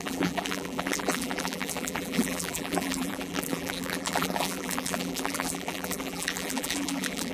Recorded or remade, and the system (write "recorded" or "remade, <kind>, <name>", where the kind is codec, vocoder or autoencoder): remade, vocoder, BigVGAN v2